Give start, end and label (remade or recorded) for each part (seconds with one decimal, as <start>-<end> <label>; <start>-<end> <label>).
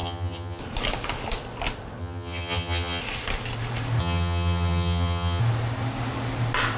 0.0-0.6 remade; 0.6-2.0 recorded; 2.0-3.0 remade; 3.0-4.0 recorded; 4.0-5.4 remade; 5.4-6.8 recorded